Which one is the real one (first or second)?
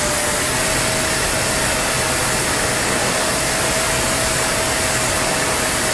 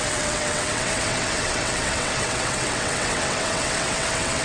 first